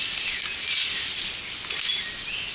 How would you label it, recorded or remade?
recorded